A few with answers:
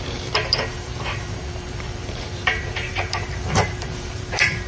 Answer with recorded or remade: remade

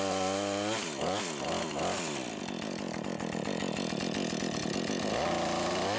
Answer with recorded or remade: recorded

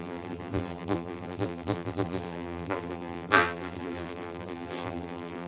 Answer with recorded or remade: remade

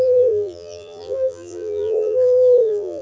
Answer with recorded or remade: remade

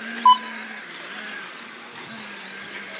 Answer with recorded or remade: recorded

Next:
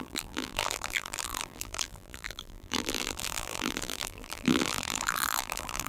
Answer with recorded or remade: remade